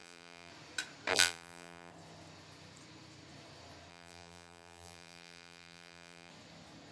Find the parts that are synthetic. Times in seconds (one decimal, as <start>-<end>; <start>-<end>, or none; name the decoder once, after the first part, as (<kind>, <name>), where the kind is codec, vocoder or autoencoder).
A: 0.0-0.5 (vocoder, BigVGAN v2); 1.1-1.9; 3.9-6.3